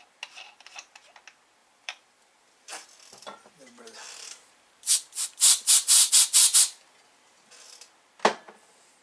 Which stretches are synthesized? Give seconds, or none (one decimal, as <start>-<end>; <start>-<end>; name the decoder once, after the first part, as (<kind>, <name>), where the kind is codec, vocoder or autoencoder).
1.6-6.1 (vocoder, BigVGAN v2)